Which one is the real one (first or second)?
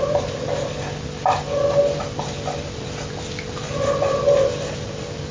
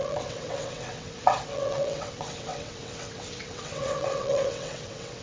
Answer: first